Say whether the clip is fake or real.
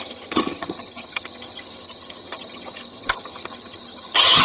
fake